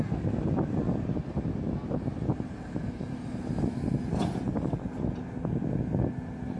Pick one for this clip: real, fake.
real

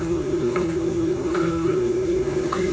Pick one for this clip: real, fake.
fake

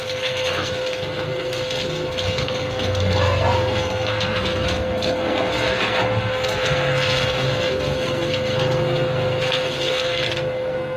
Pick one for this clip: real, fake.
fake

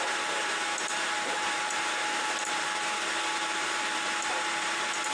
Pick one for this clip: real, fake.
fake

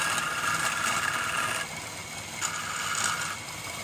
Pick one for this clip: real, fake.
real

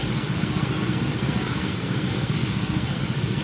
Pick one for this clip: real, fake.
fake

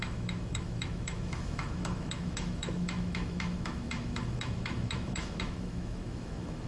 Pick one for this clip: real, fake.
fake